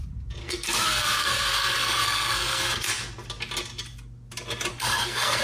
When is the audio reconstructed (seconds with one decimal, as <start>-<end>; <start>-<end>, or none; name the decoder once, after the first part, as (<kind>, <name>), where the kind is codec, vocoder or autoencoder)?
0.4-2.9 (codec, SNAC); 4.7-5.4